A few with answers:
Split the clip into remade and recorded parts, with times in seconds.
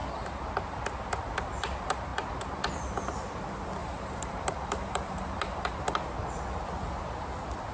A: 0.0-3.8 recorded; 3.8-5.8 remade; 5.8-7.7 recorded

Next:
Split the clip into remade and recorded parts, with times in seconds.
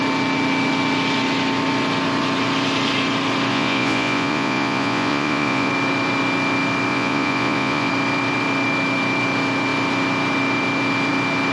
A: 0.0-3.5 recorded; 3.5-5.7 remade; 5.7-6.9 recorded; 6.9-7.9 remade; 7.9-11.5 recorded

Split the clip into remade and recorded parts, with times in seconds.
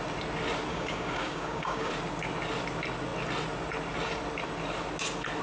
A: 0.0-0.7 recorded; 0.7-1.9 remade; 1.9-5.4 recorded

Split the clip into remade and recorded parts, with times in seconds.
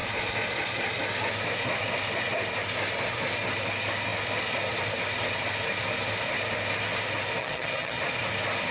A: 0.0-7.4 recorded; 7.4-8.0 remade; 8.0-8.7 recorded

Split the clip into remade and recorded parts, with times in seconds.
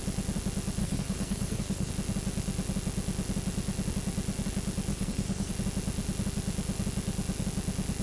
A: 0.0-0.8 recorded; 0.8-1.9 remade; 1.9-4.9 recorded; 4.9-5.5 remade; 5.5-8.0 recorded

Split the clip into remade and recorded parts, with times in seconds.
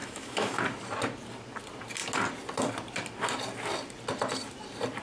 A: 0.0-0.6 remade; 0.6-5.0 recorded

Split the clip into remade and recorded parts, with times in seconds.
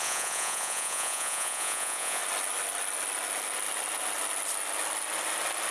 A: 0.0-2.2 remade; 2.2-5.7 recorded